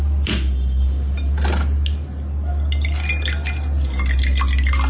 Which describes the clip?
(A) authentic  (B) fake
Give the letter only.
A